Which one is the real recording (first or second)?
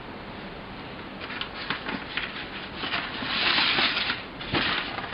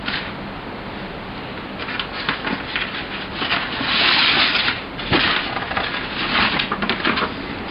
second